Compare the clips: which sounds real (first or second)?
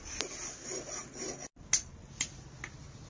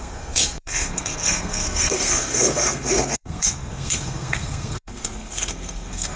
first